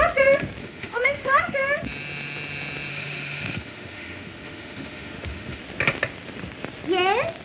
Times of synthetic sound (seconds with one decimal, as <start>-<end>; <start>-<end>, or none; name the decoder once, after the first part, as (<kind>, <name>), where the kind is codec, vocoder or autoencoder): 0.6-1.6 (autoencoder, DAC-VAE); 2.9-5.6